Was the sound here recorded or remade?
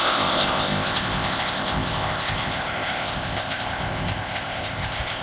remade